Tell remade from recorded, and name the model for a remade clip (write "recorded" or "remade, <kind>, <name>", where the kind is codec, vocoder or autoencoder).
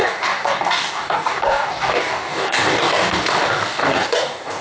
remade, codec, DAC